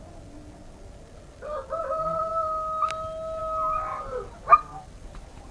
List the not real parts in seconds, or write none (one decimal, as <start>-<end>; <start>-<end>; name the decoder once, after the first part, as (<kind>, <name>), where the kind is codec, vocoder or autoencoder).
none